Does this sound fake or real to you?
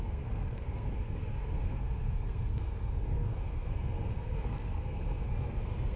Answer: fake